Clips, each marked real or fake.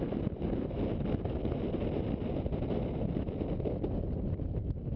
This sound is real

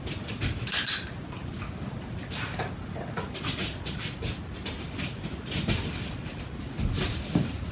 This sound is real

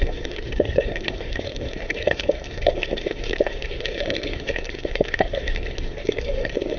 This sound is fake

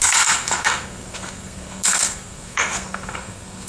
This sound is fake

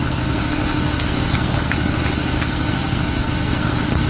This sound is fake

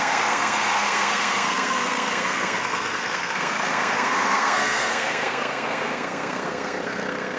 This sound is fake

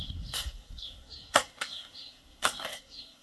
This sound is fake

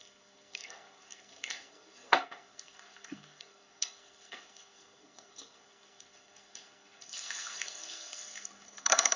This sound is fake